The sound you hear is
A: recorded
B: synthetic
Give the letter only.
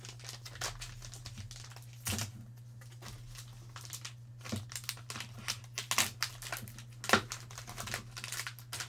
A